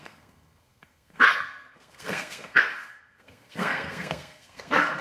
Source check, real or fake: fake